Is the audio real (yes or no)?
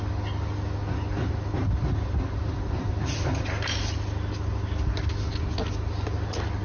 yes